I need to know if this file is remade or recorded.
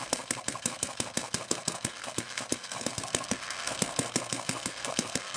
remade